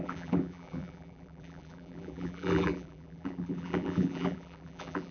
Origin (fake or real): fake